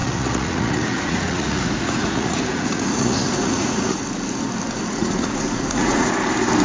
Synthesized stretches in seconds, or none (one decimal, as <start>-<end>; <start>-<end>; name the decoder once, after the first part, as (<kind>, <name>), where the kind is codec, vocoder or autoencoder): 0.0-4.0 (vocoder, Vocos); 5.0-6.1

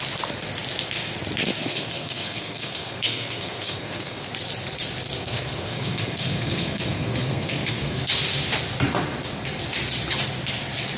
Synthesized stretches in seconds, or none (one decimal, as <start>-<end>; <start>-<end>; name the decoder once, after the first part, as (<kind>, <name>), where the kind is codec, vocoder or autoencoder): 1.6-4.3 (codec, SNAC); 5.2-8.1

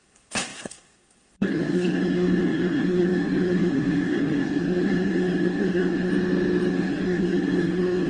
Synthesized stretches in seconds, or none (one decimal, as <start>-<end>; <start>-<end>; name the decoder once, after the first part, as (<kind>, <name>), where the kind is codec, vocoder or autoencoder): 0.0-6.1 (codec, SNAC); 6.7-8.1

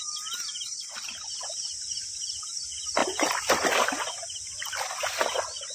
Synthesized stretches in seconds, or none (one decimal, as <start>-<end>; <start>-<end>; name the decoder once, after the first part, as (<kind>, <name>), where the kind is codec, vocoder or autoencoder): none

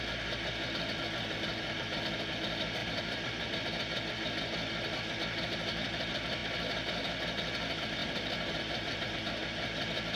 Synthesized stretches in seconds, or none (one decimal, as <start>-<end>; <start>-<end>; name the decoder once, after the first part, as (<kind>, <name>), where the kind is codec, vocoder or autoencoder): 2.8-3.6 (vocoder, BigVGAN v2); 8.0-9.0

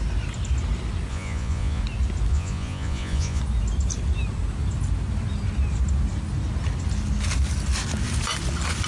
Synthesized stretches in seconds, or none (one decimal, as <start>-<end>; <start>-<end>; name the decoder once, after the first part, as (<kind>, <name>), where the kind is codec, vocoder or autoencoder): 1.1-1.8 (vocoder, Vocos); 2.3-3.4

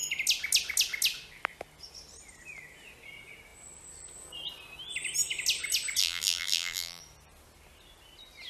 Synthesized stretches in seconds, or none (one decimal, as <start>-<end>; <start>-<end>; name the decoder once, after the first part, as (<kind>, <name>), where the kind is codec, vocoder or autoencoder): 6.0-7.0 (vocoder, BigVGAN v2)

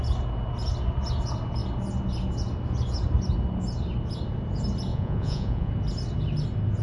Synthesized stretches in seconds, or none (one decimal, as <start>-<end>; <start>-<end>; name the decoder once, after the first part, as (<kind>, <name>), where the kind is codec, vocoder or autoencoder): 4.9-5.7 (vocoder, Vocos)